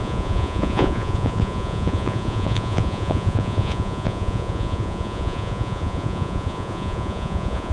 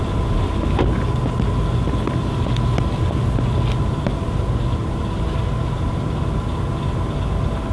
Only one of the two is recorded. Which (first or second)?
second